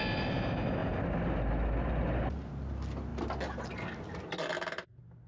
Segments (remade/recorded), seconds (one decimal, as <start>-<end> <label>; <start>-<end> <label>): 0.0-5.3 recorded